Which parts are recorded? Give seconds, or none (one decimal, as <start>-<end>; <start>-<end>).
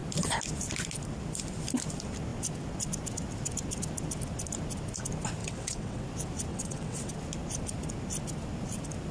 0.0-5.4; 6.0-6.5; 7.1-9.1